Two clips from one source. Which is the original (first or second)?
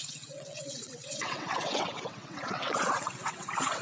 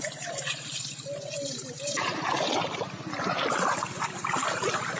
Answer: second